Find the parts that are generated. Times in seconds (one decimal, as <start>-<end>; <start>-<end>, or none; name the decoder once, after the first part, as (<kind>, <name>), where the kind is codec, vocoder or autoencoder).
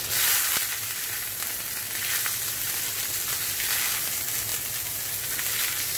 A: none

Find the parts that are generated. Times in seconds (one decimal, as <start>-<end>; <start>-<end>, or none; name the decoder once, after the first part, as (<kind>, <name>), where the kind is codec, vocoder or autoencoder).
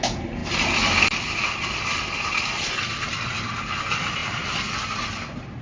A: 4.2-5.6 (vocoder, BigVGAN v2)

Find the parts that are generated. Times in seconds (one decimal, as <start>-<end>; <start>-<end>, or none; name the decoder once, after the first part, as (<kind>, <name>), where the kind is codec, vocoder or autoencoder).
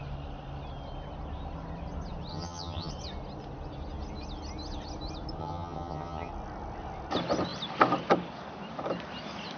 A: 2.3-2.9 (vocoder, HiFi-GAN); 5.4-6.3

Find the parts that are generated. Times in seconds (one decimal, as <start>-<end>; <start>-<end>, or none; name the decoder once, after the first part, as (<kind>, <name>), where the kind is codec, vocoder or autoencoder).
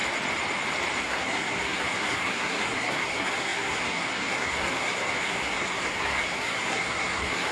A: 1.0-7.5 (codec, SNAC)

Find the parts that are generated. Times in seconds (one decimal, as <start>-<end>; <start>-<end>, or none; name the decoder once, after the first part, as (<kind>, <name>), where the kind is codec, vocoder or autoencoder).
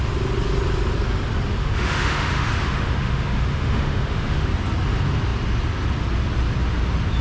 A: 1.6-4.5 (autoencoder, DAC-VAE)